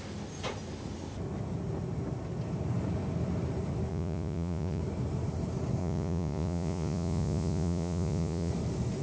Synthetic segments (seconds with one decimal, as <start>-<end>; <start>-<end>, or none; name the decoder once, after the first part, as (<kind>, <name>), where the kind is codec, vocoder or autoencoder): 3.9-4.8 (vocoder, Vocos); 5.8-8.5